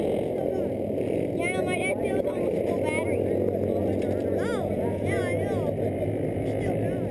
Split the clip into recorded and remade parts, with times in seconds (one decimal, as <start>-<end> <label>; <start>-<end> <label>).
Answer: 0.0-4.7 recorded; 4.7-5.2 remade; 5.2-7.1 recorded